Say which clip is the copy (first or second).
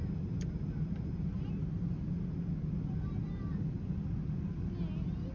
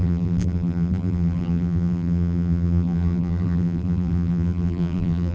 second